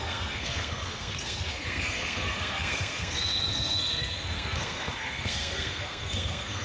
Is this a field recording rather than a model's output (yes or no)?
no